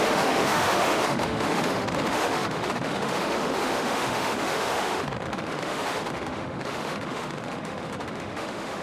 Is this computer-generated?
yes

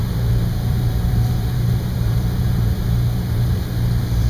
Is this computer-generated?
yes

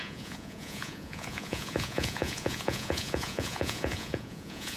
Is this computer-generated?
yes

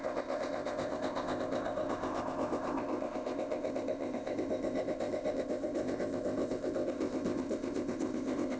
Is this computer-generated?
yes